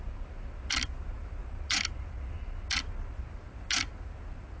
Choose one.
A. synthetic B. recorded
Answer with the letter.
B